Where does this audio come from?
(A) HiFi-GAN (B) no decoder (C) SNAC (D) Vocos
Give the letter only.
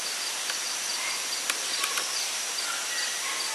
B